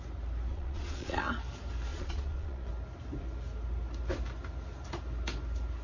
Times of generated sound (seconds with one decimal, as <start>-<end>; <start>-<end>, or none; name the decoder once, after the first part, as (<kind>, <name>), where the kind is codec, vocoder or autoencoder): 0.5-1.2 (vocoder, Vocos); 1.9-2.7